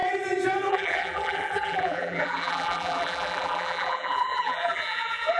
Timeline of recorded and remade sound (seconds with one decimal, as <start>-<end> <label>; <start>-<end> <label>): 0.0-0.7 recorded; 0.7-5.4 remade